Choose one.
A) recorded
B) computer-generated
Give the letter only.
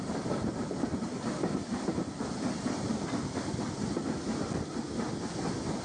A